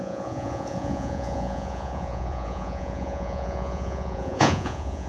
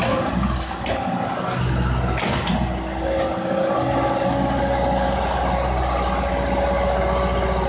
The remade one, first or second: first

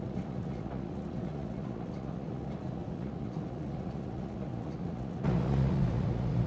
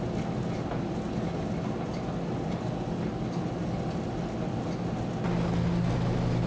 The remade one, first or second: first